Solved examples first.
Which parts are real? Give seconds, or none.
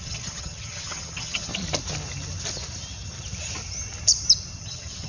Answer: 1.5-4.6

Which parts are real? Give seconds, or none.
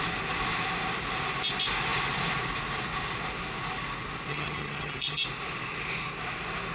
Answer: 0.0-4.3; 5.2-6.7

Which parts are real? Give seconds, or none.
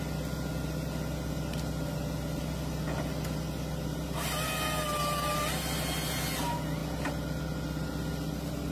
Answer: 0.0-8.7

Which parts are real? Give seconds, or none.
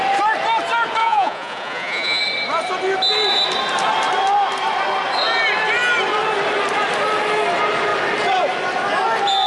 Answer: 0.0-1.0; 2.2-9.5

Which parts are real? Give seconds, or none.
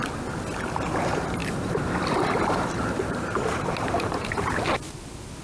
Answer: 0.0-1.4; 4.6-5.4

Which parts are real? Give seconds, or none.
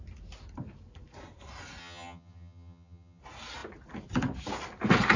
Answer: 0.0-1.8; 3.2-5.2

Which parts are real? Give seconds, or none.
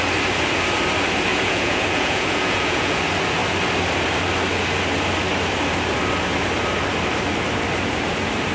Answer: 0.0-1.3; 3.0-8.5